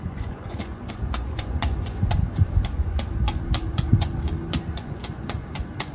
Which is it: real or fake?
fake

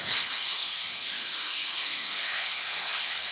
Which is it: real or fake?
fake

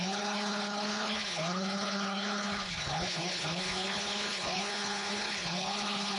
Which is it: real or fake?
fake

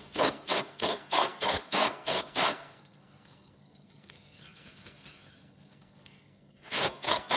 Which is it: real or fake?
fake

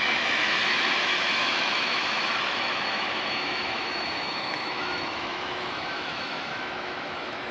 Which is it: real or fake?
fake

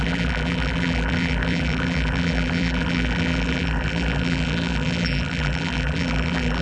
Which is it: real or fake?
fake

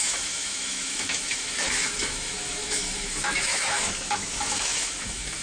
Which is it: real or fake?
fake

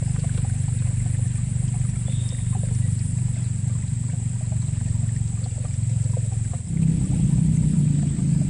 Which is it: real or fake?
real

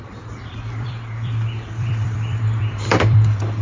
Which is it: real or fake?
fake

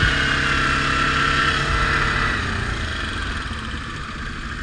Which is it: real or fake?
real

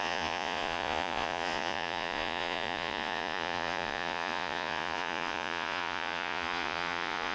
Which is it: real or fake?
fake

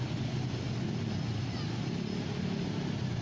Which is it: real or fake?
real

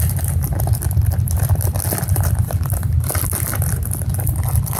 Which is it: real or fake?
real